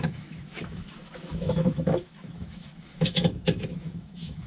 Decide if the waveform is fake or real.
fake